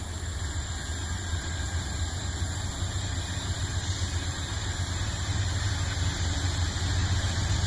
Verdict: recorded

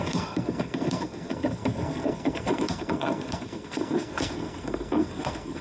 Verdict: remade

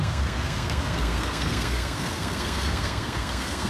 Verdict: remade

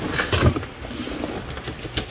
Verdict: recorded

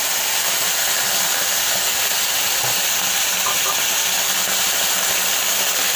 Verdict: recorded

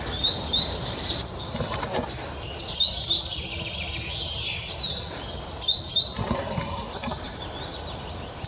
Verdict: remade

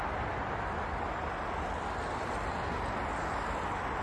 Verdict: recorded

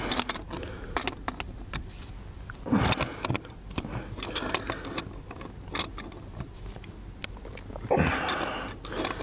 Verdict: recorded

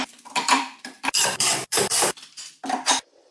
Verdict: remade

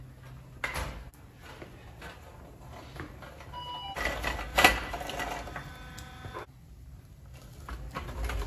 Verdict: recorded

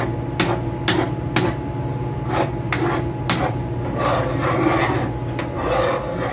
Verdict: recorded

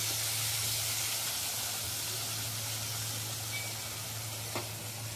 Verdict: recorded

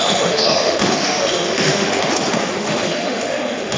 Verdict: remade